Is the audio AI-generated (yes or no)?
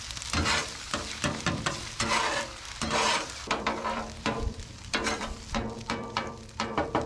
yes